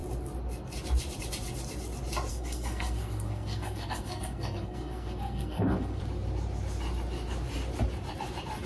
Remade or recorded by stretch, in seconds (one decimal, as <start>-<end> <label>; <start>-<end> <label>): 0.0-2.3 recorded; 2.3-6.0 remade; 6.0-8.7 recorded